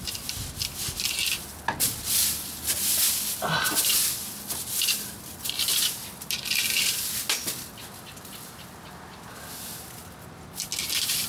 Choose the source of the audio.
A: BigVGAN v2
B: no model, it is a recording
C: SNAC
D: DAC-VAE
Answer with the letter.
B